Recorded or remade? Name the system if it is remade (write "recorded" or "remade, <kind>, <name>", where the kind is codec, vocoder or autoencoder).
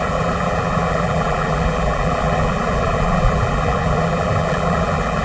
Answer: remade, vocoder, BigVGAN v2